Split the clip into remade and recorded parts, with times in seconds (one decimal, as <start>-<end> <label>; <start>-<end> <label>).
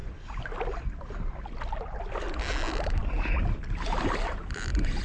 0.0-5.0 recorded